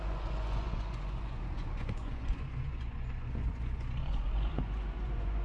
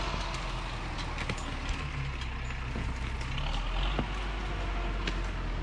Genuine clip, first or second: second